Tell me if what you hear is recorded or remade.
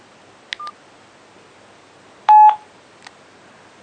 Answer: recorded